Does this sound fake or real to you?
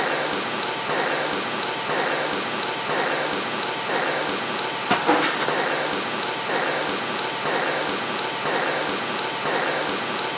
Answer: real